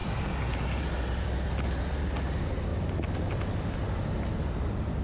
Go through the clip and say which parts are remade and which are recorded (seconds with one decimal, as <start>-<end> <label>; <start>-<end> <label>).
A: 0.0-5.0 recorded